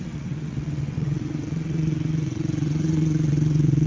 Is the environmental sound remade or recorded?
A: remade